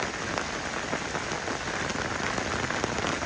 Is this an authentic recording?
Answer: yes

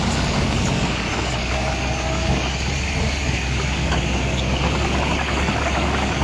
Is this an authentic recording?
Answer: no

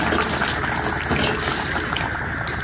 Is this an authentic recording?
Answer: yes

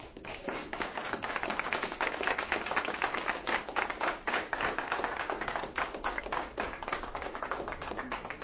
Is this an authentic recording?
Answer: no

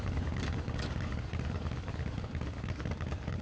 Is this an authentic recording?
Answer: no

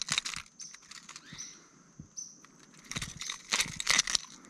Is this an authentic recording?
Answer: yes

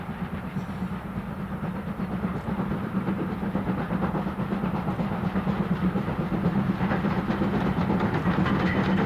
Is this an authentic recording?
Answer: yes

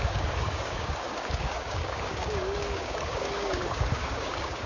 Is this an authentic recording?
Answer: no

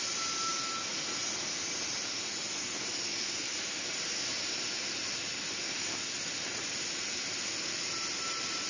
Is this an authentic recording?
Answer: yes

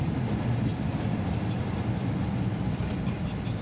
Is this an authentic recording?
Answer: yes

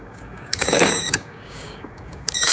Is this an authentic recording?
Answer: no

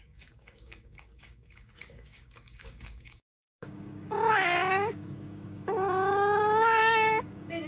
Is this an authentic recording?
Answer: no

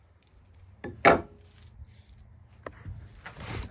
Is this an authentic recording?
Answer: yes